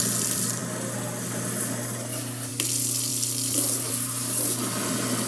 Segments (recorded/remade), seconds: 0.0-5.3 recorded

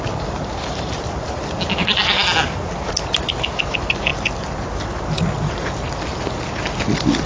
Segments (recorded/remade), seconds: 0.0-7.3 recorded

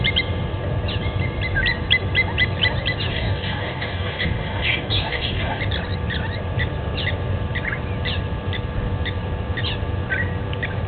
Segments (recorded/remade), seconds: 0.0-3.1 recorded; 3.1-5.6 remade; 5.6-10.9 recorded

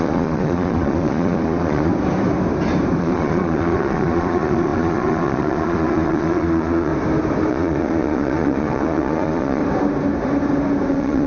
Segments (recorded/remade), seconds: 0.0-1.9 remade; 1.9-3.0 recorded; 3.0-6.9 remade; 6.9-7.5 recorded; 7.5-9.6 remade; 9.6-10.9 recorded; 10.9-11.3 remade

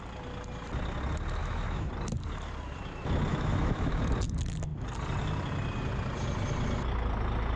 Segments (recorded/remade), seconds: 0.0-1.4 recorded; 1.4-1.9 remade; 1.9-3.3 recorded; 3.3-4.0 remade; 4.0-7.6 recorded

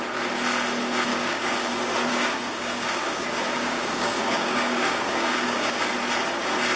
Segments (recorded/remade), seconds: 0.0-1.1 recorded; 1.1-1.7 remade; 1.7-2.1 recorded; 2.1-5.8 remade; 5.8-6.8 recorded